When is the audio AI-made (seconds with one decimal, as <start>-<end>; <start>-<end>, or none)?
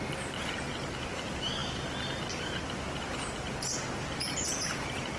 none